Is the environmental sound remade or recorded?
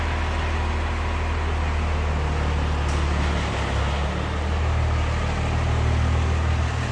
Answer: recorded